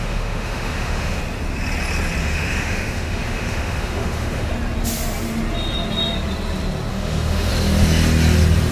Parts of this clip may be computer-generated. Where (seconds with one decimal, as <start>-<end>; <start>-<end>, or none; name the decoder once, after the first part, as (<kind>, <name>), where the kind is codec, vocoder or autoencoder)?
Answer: 0.0-1.2 (autoencoder, DAC-VAE); 2.2-4.5; 6.9-7.5